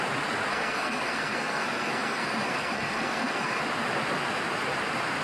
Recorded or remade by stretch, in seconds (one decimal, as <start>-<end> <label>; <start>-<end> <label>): 0.0-0.5 recorded; 0.5-3.6 remade; 3.6-5.2 recorded